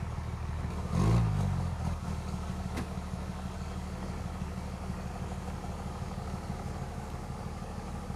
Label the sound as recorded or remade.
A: remade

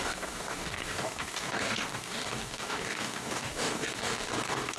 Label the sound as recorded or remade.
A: remade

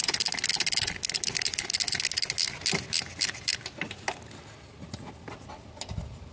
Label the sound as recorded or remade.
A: recorded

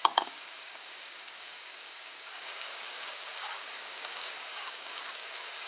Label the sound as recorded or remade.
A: remade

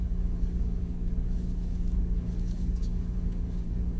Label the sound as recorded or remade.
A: remade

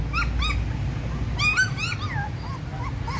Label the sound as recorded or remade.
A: recorded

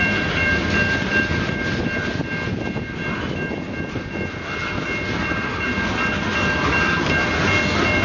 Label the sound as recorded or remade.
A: recorded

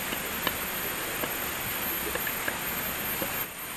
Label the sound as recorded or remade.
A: recorded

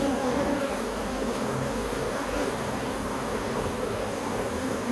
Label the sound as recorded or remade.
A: remade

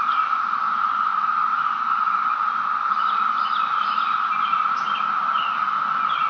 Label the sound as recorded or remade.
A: recorded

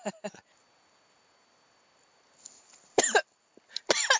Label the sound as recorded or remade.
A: recorded